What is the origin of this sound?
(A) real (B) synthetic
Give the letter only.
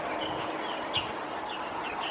A